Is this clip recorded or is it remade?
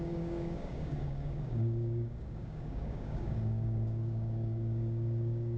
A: remade